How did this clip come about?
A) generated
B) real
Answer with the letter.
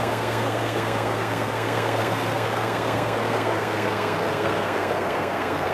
A